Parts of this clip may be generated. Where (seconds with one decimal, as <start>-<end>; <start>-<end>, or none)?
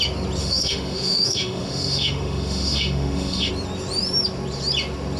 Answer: 0.4-3.5